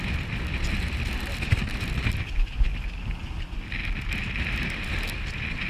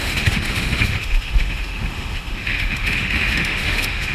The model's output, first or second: second